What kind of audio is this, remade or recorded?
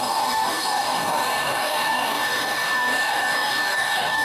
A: remade